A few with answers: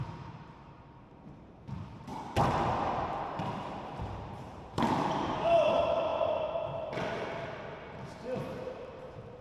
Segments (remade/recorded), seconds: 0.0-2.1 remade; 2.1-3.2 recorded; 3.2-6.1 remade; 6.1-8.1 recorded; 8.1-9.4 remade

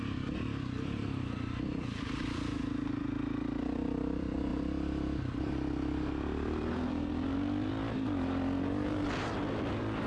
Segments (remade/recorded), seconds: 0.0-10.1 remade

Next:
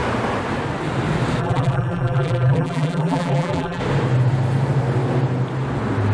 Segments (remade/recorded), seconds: 0.0-1.4 recorded; 1.4-3.8 remade; 3.8-6.1 recorded

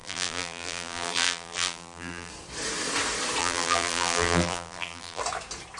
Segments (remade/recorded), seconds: 0.0-2.3 remade; 2.3-3.4 recorded; 3.4-5.2 remade; 5.2-5.8 recorded

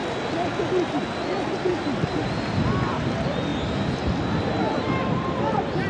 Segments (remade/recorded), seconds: 0.0-5.9 recorded

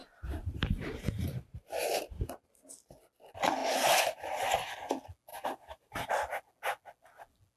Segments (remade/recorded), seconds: 0.0-2.4 remade; 2.4-3.6 recorded; 3.6-4.7 remade; 4.7-5.3 recorded; 5.3-6.1 remade; 6.1-7.6 recorded